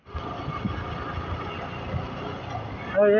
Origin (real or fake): real